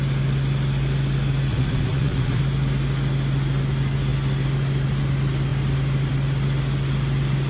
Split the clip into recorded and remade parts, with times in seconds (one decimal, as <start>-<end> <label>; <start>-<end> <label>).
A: 0.0-1.5 recorded; 1.5-2.4 remade; 2.4-7.5 recorded